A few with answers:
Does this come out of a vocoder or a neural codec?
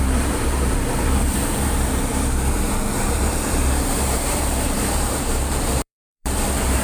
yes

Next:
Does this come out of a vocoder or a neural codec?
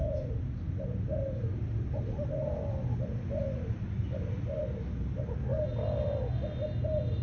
no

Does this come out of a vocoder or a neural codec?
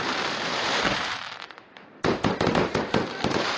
yes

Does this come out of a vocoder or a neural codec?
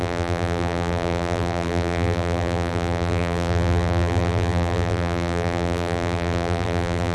yes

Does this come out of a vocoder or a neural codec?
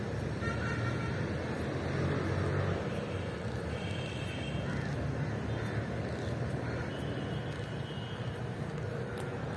no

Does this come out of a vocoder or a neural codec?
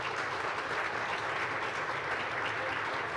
no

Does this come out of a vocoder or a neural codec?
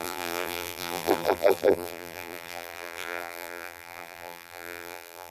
yes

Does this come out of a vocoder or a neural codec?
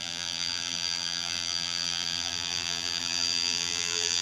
yes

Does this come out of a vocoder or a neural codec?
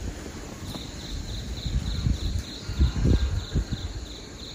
no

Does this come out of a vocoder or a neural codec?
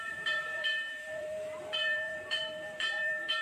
yes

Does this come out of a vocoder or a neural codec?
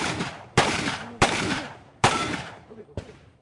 yes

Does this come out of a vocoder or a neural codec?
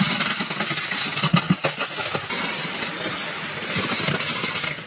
no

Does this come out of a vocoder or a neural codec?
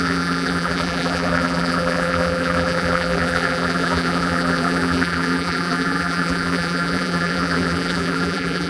yes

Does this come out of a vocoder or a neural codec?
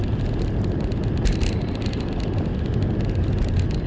no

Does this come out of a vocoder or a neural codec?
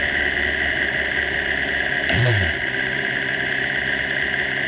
no